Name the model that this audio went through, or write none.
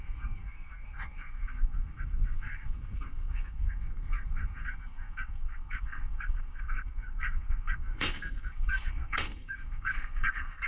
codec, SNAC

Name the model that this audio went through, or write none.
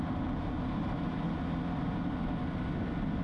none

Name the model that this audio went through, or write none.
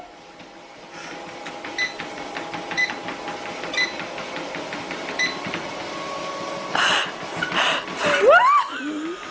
none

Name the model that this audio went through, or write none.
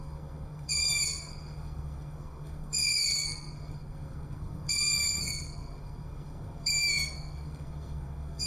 codec, SNAC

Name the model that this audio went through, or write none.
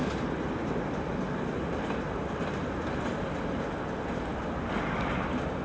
none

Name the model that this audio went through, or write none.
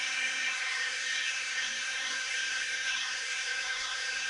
codec, SNAC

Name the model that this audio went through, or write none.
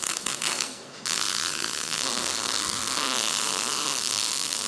codec, SNAC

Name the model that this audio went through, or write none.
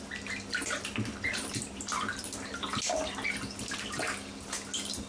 none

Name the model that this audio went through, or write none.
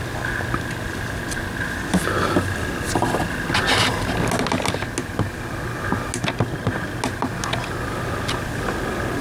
none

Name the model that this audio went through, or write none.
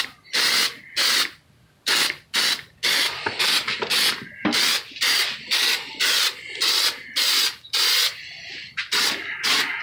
none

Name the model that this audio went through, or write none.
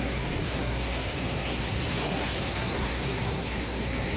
codec, SNAC